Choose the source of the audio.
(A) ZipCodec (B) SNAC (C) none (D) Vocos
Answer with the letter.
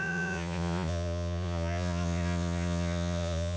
D